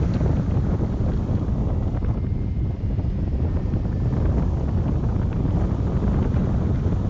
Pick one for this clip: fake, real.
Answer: real